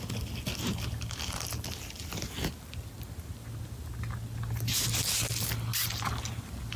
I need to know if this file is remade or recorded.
remade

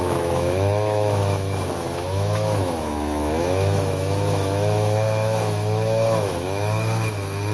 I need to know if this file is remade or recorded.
remade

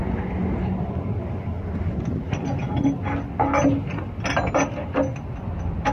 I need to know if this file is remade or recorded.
recorded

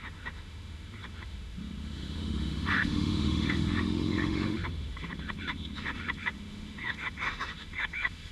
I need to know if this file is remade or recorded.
remade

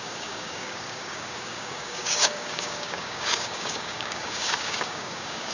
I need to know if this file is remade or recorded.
remade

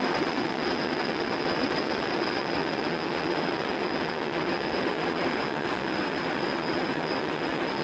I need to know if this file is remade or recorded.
remade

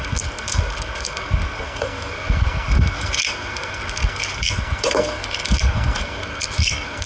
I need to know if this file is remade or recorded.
remade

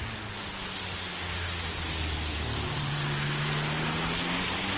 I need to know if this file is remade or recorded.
recorded